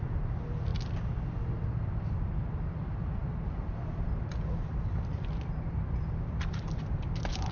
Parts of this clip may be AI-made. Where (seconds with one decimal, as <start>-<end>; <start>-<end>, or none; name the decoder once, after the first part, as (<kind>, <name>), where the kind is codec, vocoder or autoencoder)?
none